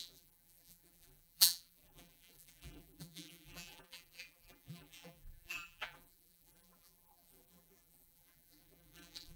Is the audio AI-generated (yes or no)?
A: yes